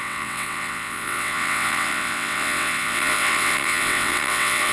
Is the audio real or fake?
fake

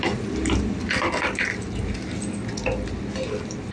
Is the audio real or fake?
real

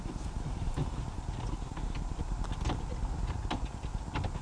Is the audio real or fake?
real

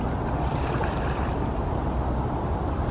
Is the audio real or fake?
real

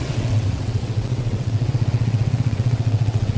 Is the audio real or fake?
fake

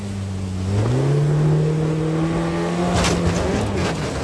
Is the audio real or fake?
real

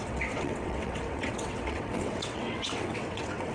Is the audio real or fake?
fake